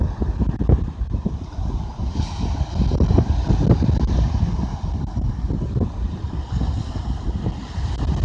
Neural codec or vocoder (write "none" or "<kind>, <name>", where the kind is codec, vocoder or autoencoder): none